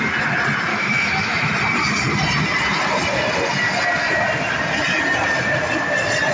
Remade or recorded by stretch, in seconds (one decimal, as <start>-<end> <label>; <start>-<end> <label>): 0.0-0.7 recorded; 0.7-1.5 remade; 1.5-6.3 recorded

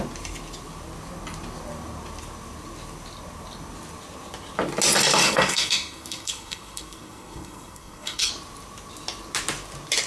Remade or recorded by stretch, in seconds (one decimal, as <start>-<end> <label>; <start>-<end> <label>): 0.0-5.2 recorded; 5.2-8.3 remade; 8.3-10.1 recorded

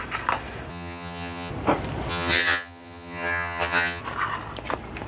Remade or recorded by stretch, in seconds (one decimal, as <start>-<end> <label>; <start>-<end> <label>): 0.0-0.7 recorded; 0.7-1.5 remade; 1.5-2.1 recorded; 2.1-4.0 remade; 4.0-5.1 recorded

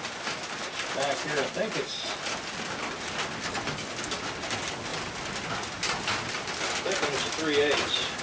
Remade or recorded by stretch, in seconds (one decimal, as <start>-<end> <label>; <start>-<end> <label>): 0.0-8.2 recorded

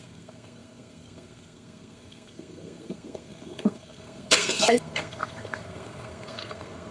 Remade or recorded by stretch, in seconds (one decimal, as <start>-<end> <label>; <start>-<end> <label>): 0.0-6.9 remade

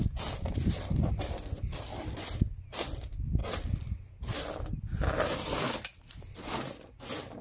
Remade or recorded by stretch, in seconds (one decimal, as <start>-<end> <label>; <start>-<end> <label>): 0.0-7.4 recorded

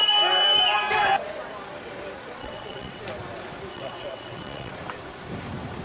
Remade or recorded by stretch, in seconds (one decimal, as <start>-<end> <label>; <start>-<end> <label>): 0.0-2.4 recorded; 2.4-3.0 remade; 3.0-3.7 recorded; 3.7-4.7 remade; 4.7-5.8 recorded

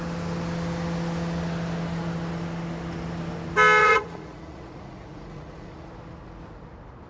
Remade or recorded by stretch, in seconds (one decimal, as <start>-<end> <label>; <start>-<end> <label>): 0.0-3.8 recorded; 3.8-5.9 remade; 5.9-7.1 recorded